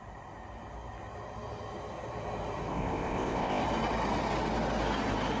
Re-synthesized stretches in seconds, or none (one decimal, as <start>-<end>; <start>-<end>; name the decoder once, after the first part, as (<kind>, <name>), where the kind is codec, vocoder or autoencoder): 2.7-3.6 (codec, ZipCodec)